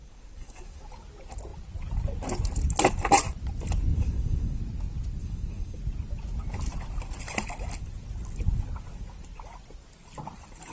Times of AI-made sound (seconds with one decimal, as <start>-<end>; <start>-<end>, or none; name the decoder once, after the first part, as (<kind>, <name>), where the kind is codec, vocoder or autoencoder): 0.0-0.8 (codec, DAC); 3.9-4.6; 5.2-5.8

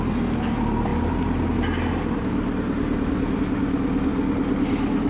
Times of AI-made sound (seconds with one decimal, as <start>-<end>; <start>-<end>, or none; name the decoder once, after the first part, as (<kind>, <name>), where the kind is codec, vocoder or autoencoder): none

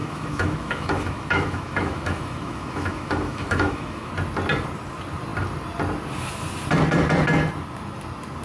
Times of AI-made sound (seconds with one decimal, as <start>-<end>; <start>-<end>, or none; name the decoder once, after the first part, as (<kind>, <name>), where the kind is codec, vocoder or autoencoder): 0.0-4.1 (autoencoder, DAC-VAE)

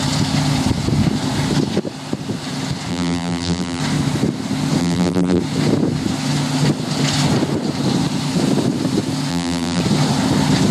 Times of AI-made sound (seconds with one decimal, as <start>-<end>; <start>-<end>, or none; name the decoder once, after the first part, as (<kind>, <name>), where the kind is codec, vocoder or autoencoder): 2.9-3.8 (vocoder, BigVGAN v2); 4.8-5.4; 9.3-9.8

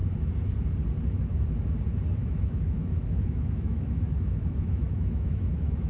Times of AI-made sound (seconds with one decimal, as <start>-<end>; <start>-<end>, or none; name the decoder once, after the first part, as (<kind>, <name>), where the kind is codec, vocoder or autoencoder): 2.2-5.9 (autoencoder, DAC-VAE)

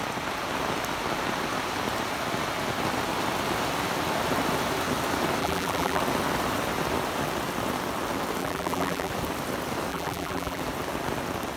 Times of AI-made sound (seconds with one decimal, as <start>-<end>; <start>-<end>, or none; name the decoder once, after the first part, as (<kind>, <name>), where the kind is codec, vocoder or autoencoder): 5.4-6.0 (vocoder, BigVGAN v2); 8.4-9.1; 9.9-10.6

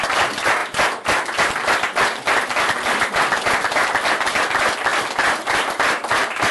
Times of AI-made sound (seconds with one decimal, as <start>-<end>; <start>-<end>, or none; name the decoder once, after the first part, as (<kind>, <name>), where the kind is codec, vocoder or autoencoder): none